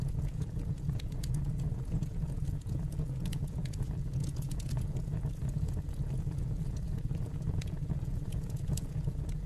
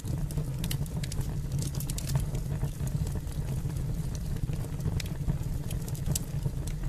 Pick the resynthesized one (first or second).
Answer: first